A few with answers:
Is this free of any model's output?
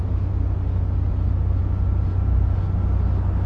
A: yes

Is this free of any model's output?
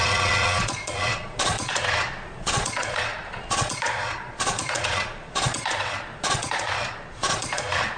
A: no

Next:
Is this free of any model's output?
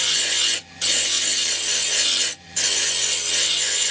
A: no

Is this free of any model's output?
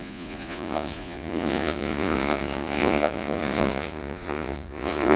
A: no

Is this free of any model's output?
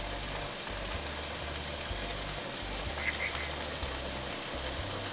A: yes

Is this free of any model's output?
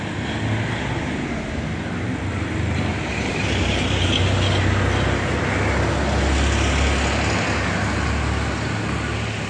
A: yes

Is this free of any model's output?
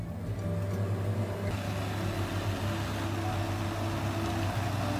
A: yes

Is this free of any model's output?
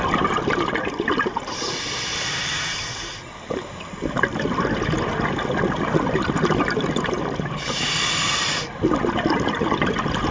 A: yes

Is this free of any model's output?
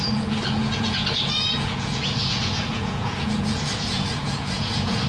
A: no